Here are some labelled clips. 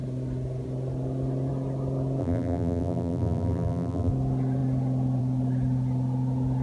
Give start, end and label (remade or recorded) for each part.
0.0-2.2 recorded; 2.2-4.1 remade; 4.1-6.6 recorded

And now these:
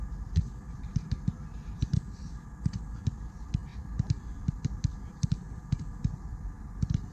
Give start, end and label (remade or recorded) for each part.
0.0-1.8 recorded; 1.8-2.3 remade; 2.3-3.7 recorded; 3.7-6.6 remade; 6.6-7.1 recorded

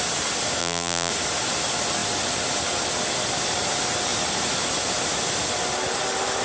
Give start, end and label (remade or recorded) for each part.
0.0-0.6 recorded; 0.6-1.1 remade; 1.1-6.4 recorded

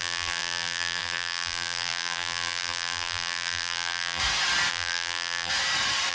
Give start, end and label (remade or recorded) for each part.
0.0-4.2 remade; 4.2-4.7 recorded; 4.7-5.5 remade; 5.5-6.1 recorded

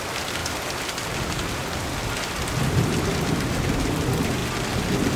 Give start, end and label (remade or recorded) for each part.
0.0-5.2 recorded

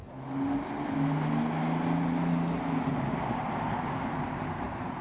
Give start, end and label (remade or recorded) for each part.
0.0-2.9 recorded; 2.9-5.0 remade